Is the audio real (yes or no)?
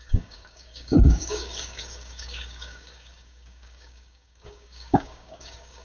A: no